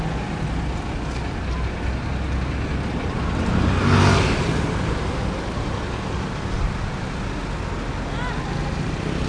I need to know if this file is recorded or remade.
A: recorded